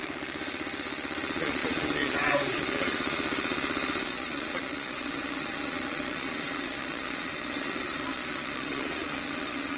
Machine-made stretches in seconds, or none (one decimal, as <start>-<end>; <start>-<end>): 0.0-9.8